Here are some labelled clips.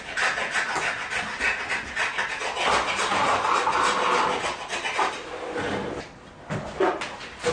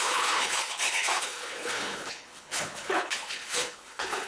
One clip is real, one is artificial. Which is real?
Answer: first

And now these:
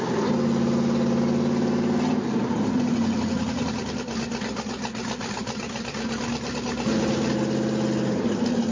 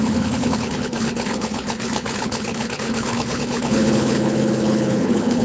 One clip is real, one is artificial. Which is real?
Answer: first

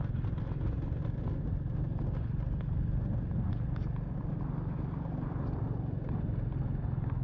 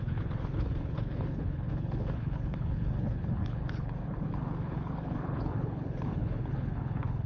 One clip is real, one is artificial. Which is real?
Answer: first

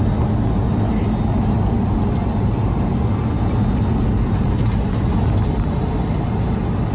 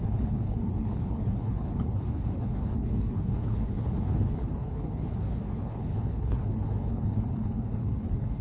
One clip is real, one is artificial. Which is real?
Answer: first